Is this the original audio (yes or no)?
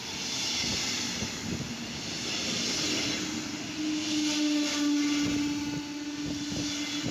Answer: yes